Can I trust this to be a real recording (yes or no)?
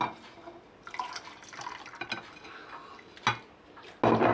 yes